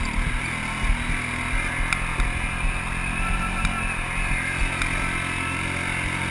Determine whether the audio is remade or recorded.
recorded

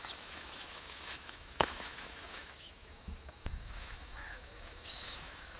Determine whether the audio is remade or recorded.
remade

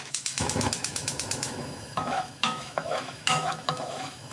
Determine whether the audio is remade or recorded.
remade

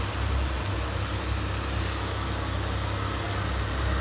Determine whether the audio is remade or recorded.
recorded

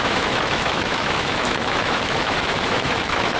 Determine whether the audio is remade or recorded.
remade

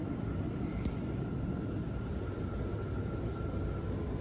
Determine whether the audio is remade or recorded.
recorded